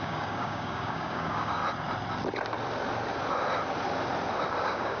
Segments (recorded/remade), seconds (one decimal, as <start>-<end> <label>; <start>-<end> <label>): 0.0-1.6 remade; 1.6-4.6 recorded; 4.6-5.0 remade